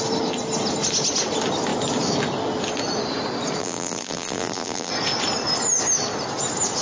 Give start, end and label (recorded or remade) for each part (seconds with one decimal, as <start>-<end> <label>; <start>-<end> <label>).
0.0-3.6 recorded; 3.6-4.9 remade; 4.9-6.8 recorded